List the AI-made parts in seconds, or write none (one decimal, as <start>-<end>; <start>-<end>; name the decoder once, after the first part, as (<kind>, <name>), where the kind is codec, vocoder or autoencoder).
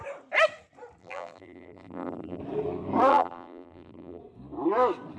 1.0-2.4 (vocoder, BigVGAN v2); 3.1-4.2